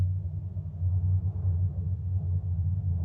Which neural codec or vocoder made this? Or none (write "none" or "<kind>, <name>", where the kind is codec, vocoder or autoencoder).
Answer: none